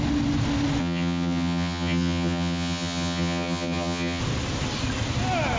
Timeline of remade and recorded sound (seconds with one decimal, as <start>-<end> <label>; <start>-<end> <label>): 0.0-0.8 recorded; 0.8-4.2 remade; 4.2-5.6 recorded